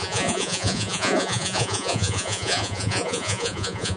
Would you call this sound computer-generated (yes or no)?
yes